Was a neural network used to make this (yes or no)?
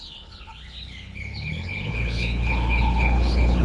yes